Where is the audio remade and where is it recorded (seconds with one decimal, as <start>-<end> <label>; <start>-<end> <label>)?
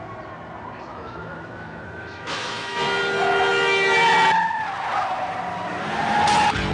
0.0-0.9 recorded; 0.9-2.8 remade; 2.8-6.7 recorded